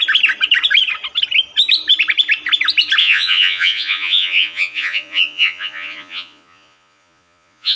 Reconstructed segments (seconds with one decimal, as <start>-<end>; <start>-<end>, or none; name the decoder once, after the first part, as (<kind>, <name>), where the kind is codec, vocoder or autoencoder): 3.0-7.8 (vocoder, Vocos)